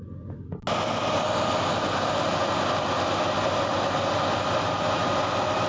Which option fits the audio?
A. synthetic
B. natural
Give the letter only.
B